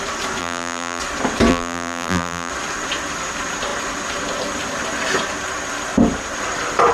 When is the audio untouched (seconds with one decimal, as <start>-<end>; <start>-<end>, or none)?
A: 0.0-0.4; 1.0-1.5; 2.5-6.9